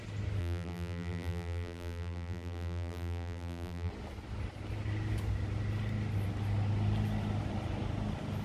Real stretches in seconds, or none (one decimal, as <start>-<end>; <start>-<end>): 0.0-0.4; 3.9-8.4